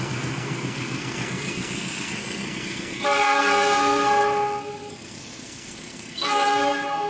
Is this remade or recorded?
remade